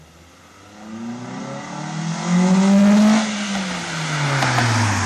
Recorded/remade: recorded